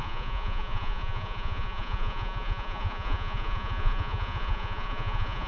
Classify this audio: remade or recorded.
remade